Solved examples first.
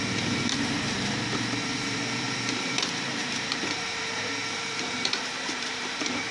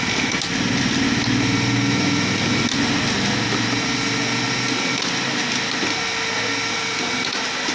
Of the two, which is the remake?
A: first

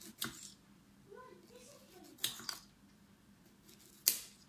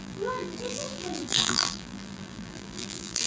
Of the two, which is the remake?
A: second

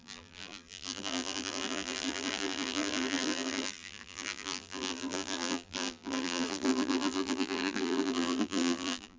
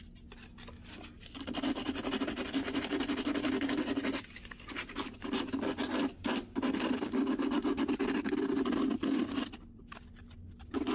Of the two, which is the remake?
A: first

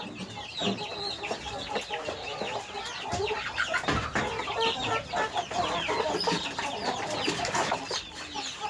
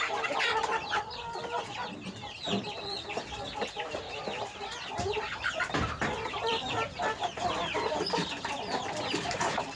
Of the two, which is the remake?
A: second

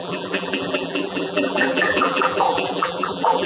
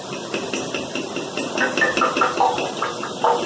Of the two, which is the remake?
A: first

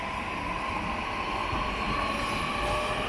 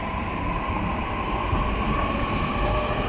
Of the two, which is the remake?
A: second